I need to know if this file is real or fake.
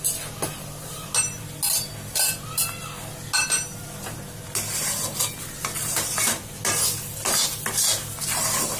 real